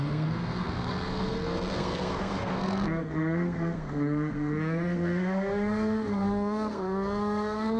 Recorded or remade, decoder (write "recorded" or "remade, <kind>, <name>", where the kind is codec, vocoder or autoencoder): remade, codec, SNAC